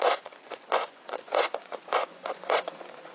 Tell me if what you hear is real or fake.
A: fake